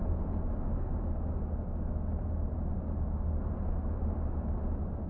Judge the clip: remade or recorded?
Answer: recorded